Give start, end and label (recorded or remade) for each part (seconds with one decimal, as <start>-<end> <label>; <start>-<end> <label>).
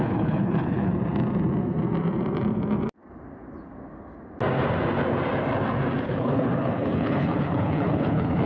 0.0-0.9 remade; 0.9-6.0 recorded; 6.0-8.5 remade